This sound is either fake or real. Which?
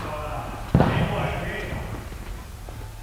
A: real